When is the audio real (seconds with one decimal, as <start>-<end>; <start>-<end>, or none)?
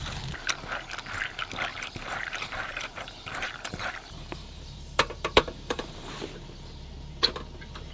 0.0-1.7; 6.1-7.9